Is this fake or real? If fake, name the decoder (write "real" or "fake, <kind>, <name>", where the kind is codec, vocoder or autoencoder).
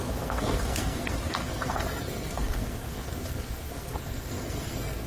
fake, codec, SNAC